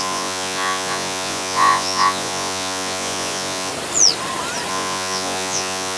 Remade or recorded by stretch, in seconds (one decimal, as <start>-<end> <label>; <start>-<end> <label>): 0.0-3.7 remade; 3.7-4.7 recorded; 4.7-6.0 remade